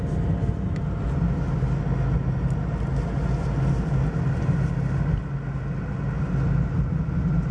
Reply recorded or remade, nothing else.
recorded